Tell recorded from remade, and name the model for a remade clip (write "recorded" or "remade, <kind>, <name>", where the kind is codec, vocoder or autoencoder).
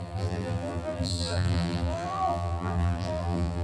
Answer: remade, vocoder, BigVGAN v2